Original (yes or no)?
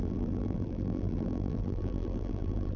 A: no